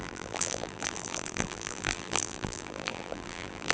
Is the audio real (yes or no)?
no